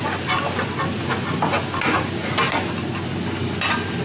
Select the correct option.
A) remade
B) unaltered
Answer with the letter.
B